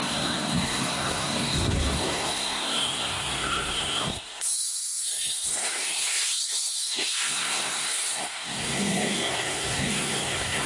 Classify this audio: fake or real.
fake